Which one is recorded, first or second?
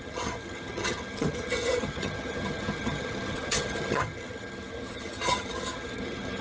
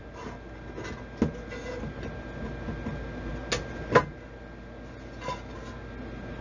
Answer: second